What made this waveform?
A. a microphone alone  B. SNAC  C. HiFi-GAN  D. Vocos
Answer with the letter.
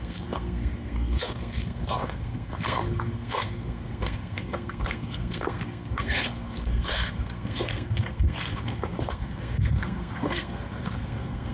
B